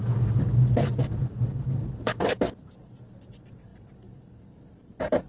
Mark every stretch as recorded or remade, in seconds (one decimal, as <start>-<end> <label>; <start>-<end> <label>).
0.0-5.3 recorded